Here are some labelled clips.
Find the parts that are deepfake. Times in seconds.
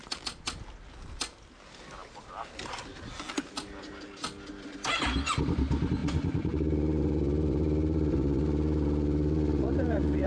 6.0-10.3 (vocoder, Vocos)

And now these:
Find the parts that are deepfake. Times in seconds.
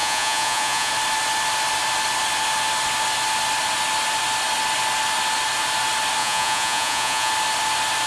0.0-0.9 (vocoder, Vocos); 6.2-7.3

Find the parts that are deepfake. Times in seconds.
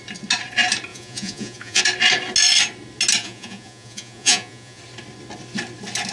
0.9-1.8 (vocoder, Vocos); 3.2-4.8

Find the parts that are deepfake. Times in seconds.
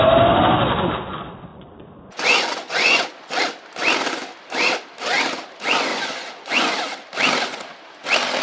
1.5-3.3 (vocoder, Vocos); 5.9-6.7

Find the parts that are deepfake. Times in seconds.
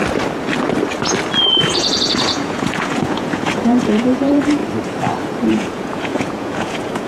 1.5-4.6 (vocoder, Vocos); 5.5-7.1